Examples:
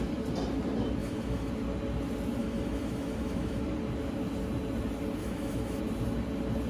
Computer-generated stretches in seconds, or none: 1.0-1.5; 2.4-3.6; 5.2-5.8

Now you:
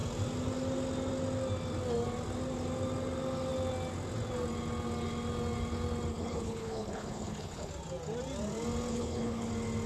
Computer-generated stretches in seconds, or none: 6.1-7.7; 8.9-9.5

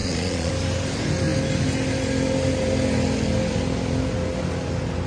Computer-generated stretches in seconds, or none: 0.0-0.5

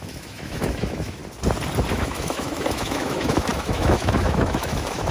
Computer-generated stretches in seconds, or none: 0.0-1.2; 1.9-5.1